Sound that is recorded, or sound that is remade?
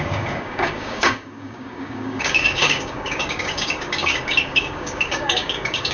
remade